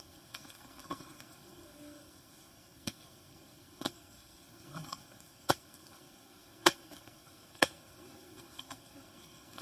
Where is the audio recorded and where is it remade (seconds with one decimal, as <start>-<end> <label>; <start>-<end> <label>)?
0.0-9.6 remade